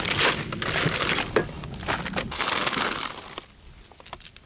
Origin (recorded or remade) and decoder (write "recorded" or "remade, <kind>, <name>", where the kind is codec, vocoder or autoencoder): recorded